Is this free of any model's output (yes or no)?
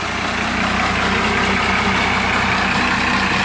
yes